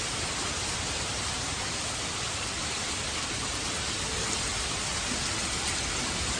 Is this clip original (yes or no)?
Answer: yes